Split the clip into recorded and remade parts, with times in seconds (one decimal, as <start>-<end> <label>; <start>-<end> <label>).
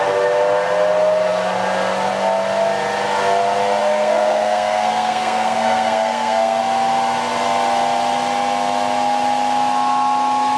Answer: 0.0-3.8 recorded; 3.8-6.6 remade; 6.6-10.6 recorded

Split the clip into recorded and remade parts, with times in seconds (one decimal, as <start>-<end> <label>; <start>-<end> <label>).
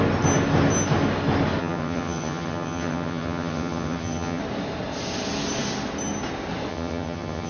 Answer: 0.0-1.6 recorded; 1.6-4.4 remade; 4.4-6.7 recorded; 6.7-7.5 remade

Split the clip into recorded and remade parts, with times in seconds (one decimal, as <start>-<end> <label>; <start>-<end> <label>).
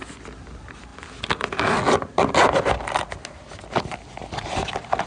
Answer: 0.0-5.1 recorded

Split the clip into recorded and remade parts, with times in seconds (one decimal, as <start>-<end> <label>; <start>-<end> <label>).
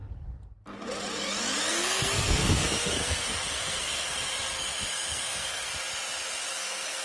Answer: 0.0-1.7 recorded; 1.7-5.7 remade; 5.7-6.5 recorded; 6.5-7.0 remade